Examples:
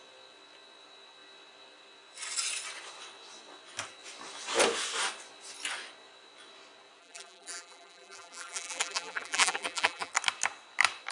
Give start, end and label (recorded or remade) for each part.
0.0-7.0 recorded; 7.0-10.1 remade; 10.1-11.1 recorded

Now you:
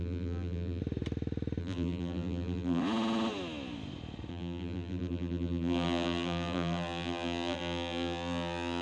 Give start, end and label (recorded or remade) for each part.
0.0-0.8 remade; 0.8-1.6 recorded; 1.6-2.8 remade; 2.8-4.3 recorded; 4.3-8.8 remade

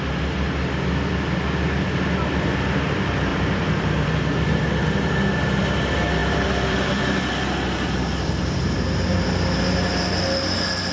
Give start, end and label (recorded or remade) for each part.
0.0-3.3 recorded; 3.3-4.7 remade; 4.7-6.2 recorded; 6.2-9.1 remade; 9.1-10.9 recorded

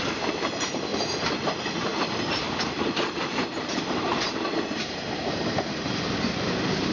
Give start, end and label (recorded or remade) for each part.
0.0-0.9 remade; 0.9-2.3 recorded; 2.3-4.1 remade; 4.1-4.6 recorded; 4.6-6.9 remade

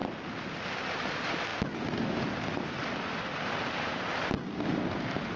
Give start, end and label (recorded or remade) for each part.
0.0-5.4 recorded

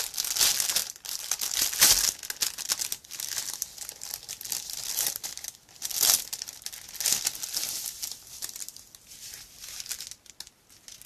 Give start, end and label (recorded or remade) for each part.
0.0-0.8 recorded; 0.8-1.3 remade; 1.3-11.1 recorded

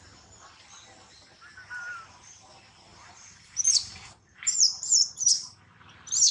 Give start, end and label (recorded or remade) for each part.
0.0-2.9 recorded; 2.9-5.7 remade; 5.7-6.3 recorded

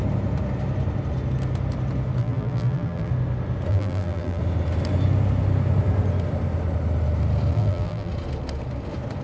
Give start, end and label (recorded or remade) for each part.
0.0-2.2 recorded; 2.2-3.1 remade; 3.1-3.7 recorded; 3.7-4.4 remade; 4.4-7.5 recorded; 7.5-8.1 remade; 8.1-9.2 recorded